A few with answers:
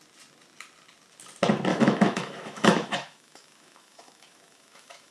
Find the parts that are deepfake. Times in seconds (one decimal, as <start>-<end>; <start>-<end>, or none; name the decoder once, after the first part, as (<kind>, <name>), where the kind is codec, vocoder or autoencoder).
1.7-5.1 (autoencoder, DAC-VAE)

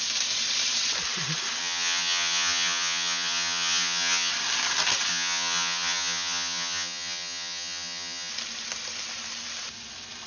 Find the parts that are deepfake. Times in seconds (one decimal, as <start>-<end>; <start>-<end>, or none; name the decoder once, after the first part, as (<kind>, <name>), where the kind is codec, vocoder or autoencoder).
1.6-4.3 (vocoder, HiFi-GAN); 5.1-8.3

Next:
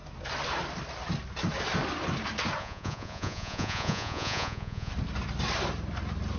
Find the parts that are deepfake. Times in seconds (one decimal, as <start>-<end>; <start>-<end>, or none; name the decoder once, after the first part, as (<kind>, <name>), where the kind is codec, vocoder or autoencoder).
2.6-4.9 (vocoder, Vocos)

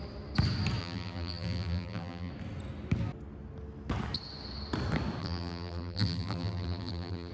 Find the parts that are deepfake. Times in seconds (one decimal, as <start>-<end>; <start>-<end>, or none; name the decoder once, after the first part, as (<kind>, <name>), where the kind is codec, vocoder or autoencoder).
0.8-2.3 (vocoder, BigVGAN v2); 5.2-7.3

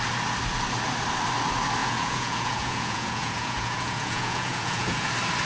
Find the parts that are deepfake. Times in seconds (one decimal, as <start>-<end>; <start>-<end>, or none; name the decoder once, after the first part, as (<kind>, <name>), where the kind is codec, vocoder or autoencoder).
1.8-5.1 (vocoder, Vocos)